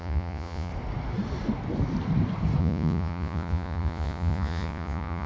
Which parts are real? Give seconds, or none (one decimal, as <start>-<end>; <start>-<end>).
0.7-2.6